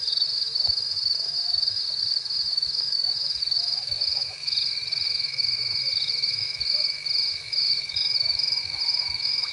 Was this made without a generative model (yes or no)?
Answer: no